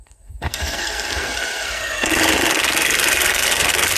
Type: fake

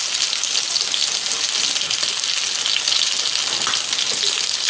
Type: real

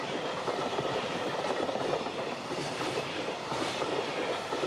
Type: fake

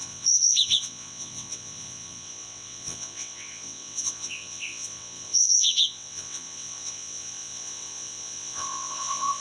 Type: fake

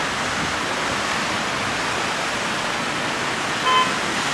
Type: real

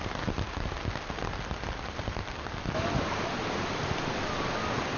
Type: real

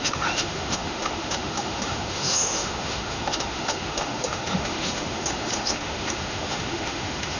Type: fake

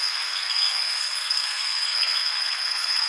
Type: fake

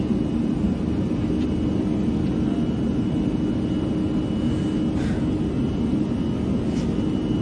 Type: real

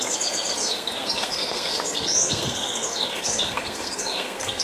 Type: fake